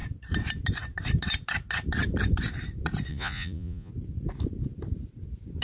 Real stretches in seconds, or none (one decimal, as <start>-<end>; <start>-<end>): 0.0-3.1; 3.9-5.6